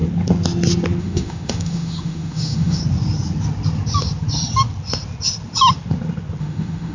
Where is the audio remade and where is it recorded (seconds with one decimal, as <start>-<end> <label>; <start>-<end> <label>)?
0.0-1.0 recorded; 1.0-2.8 remade; 2.8-6.4 recorded; 6.4-6.9 remade